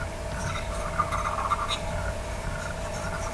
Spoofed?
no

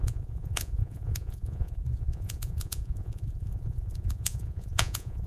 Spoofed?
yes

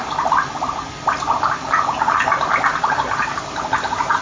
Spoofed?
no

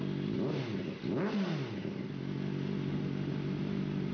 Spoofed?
no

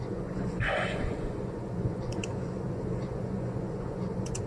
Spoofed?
yes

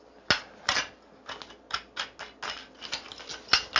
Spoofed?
no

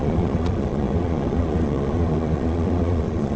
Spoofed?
yes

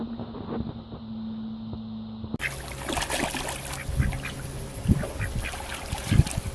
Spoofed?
no